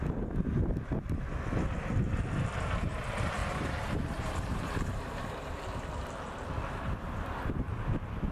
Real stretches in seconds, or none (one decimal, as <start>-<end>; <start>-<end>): 0.0-3.4; 5.6-8.3